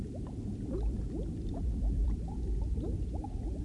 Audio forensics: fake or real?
fake